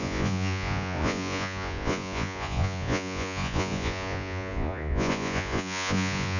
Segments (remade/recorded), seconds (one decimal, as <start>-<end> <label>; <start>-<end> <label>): 0.0-6.4 remade